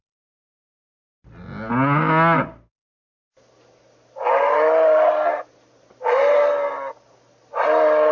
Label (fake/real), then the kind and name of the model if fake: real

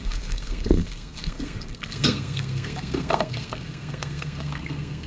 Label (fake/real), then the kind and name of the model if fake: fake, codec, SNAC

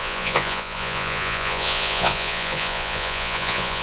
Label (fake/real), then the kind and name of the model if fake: fake, vocoder, Vocos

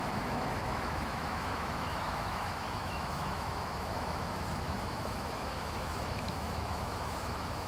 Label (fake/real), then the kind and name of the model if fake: fake, autoencoder, DAC-VAE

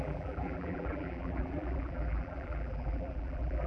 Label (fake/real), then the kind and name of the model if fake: fake, vocoder, BigVGAN v2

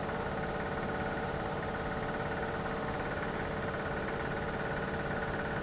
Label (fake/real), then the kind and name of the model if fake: real